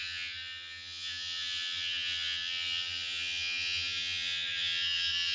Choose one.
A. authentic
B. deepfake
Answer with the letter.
B